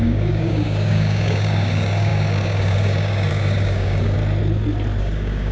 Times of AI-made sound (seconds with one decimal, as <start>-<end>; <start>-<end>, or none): 0.0-4.2; 5.0-5.5